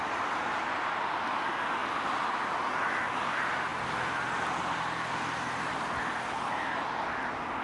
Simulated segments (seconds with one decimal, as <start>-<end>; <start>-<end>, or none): 3.7-4.6